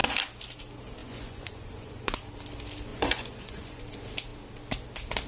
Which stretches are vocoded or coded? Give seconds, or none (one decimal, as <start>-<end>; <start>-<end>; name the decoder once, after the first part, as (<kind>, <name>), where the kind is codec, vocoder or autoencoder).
1.0-2.2 (vocoder, Vocos); 2.9-3.8